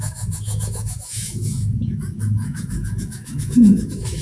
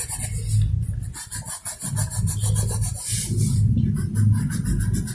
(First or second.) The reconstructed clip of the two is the first